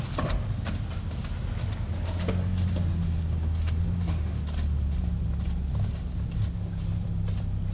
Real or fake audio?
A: real